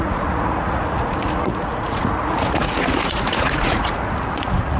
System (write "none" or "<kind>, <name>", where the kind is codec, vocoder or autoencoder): vocoder, Vocos